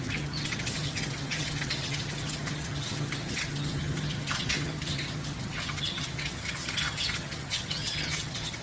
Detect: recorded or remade remade